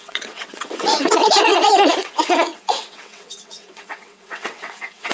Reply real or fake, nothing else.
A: fake